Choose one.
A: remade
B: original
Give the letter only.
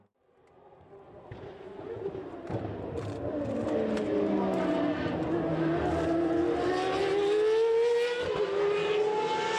B